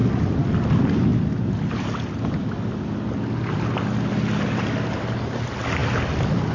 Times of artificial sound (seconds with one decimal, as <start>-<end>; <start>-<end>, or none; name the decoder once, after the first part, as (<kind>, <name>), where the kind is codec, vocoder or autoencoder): none